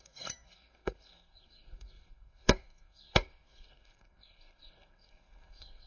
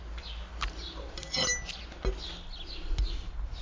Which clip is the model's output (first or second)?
first